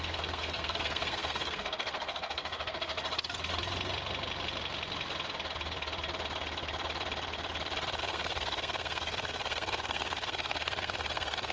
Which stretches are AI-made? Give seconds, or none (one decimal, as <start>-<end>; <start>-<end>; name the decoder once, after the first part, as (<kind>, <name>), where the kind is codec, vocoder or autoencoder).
0.0-2.9 (codec, SNAC); 8.0-11.5